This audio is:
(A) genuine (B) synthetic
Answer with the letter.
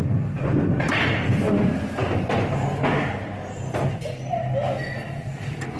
A